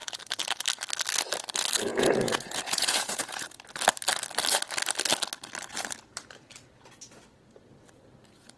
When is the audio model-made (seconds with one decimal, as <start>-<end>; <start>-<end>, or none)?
1.9-3.6